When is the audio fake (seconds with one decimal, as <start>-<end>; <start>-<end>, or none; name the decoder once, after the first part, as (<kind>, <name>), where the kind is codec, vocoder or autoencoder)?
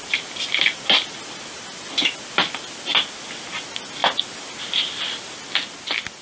none